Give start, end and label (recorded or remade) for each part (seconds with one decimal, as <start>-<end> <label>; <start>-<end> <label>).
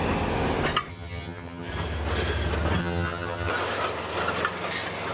0.0-0.9 recorded; 0.9-1.7 remade; 1.7-2.8 recorded; 2.8-3.5 remade; 3.5-5.1 recorded